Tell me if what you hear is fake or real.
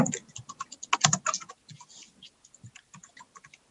real